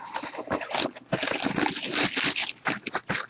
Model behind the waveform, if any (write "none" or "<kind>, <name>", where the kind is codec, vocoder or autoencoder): none